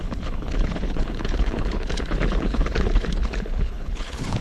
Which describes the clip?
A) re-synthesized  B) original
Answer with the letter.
A